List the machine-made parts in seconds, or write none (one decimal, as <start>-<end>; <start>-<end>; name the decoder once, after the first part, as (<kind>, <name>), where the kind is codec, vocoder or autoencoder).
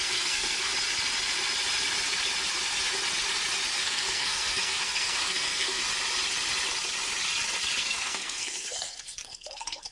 0.0-0.7 (codec, SNAC); 3.8-5.8; 7.8-9.9